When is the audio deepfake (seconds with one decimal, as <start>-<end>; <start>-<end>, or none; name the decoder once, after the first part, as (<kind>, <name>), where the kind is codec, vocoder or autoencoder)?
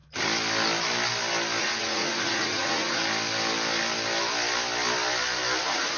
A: 1.6-3.0 (vocoder, Vocos); 5.6-6.0